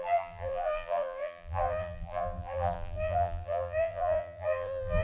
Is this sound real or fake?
fake